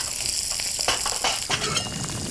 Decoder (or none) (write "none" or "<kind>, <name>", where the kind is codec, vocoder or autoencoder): none